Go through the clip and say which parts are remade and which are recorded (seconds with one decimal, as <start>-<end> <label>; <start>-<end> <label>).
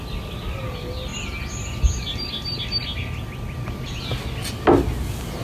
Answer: 0.0-5.4 recorded